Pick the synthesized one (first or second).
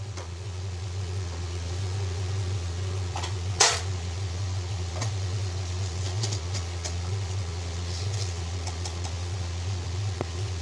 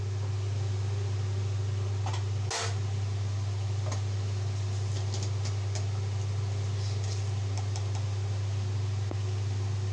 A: first